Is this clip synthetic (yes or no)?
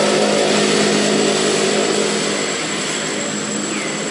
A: no